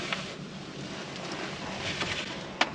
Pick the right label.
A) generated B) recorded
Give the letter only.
B